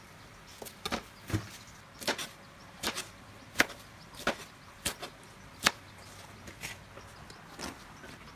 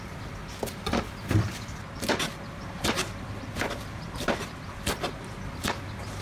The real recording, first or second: first